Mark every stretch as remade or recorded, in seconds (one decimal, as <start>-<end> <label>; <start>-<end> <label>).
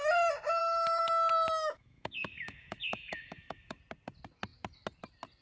0.0-0.6 recorded; 0.6-3.8 remade; 3.8-5.4 recorded